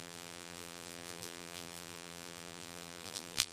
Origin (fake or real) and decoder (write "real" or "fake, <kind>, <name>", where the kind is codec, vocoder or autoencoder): fake, vocoder, BigVGAN v2